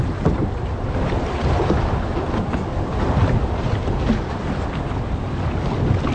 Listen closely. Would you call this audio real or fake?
real